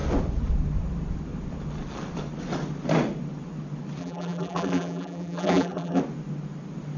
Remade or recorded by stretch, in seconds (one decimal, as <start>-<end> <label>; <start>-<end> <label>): 0.0-4.0 recorded; 4.0-6.0 remade; 6.0-7.0 recorded